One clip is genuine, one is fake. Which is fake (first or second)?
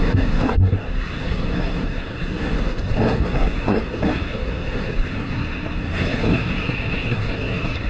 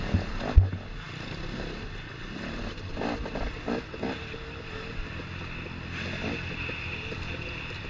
first